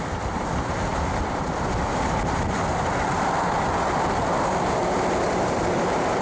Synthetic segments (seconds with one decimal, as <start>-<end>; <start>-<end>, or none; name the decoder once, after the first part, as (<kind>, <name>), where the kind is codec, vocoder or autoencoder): 2.7-3.3 (vocoder, BigVGAN v2); 4.8-6.2